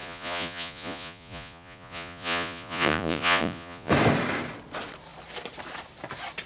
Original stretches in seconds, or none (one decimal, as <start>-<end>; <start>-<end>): 3.9-6.5